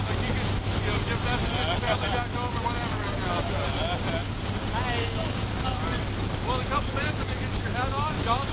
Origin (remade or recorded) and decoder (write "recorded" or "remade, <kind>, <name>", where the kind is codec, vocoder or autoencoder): recorded